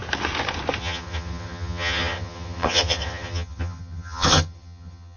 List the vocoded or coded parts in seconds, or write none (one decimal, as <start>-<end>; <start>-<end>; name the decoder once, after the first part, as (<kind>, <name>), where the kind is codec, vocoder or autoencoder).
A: 0.8-5.2 (vocoder, HiFi-GAN)

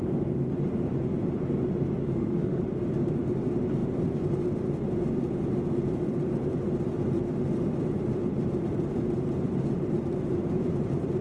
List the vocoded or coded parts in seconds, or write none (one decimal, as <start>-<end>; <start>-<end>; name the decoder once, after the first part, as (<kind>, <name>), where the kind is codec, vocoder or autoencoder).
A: 2.0-2.6 (autoencoder, DAC-VAE)

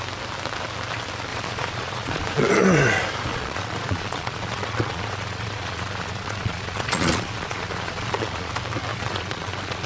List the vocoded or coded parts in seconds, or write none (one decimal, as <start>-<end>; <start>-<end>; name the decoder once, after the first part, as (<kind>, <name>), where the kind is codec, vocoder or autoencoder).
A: 1.3-2.5 (vocoder, Vocos); 3.3-8.5; 8.9-9.9

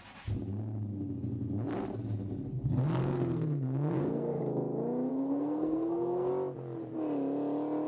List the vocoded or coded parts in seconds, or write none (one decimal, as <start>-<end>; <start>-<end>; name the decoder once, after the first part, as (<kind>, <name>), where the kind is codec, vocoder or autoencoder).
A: 3.0-4.4 (codec, SNAC); 5.1-6.3

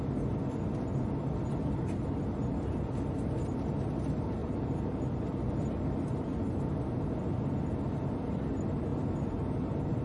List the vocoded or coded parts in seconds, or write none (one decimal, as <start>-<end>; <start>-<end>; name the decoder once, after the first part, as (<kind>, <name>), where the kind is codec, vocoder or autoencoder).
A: 4.4-5.0 (vocoder, BigVGAN v2); 8.9-9.6

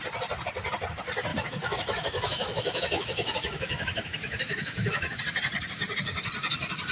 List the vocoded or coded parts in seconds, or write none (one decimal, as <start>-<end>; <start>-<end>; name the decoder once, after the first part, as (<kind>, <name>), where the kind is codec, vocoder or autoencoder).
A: 1.3-5.2 (autoencoder, DAC-VAE)

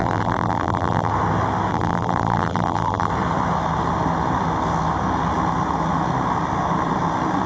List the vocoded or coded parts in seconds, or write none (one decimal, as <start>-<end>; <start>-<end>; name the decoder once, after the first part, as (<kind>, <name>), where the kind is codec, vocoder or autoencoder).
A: 0.0-1.1 (vocoder, BigVGAN v2); 1.7-3.1

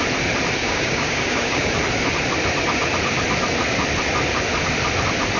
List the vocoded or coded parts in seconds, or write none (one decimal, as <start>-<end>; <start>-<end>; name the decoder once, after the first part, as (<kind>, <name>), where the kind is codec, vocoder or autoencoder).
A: 0.6-1.7 (codec, DAC)